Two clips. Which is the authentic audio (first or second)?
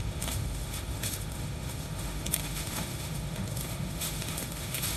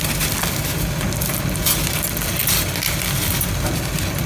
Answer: second